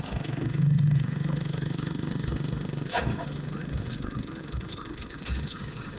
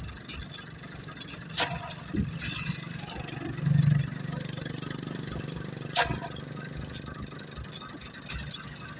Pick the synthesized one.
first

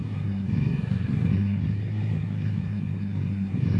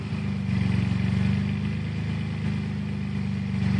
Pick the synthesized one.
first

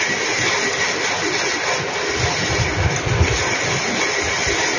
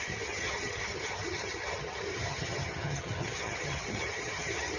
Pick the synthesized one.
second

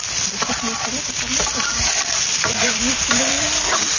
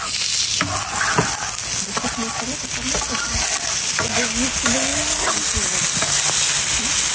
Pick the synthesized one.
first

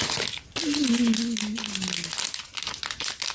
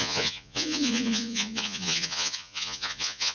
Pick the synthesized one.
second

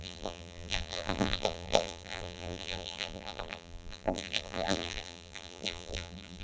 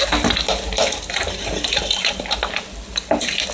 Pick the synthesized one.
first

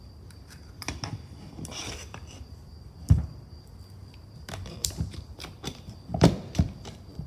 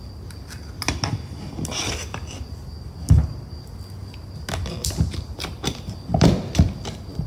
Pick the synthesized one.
first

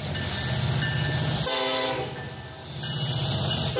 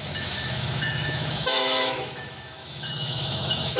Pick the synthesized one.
second